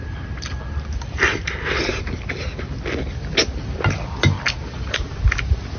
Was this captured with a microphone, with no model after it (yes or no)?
yes